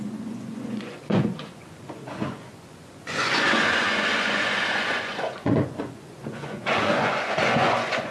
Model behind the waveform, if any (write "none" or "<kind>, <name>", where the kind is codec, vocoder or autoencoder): vocoder, Vocos